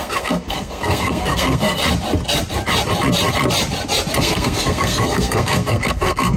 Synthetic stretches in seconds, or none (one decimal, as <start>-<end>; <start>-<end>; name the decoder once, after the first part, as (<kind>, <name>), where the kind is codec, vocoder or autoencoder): 0.0-1.8 (codec, SNAC); 4.2-6.4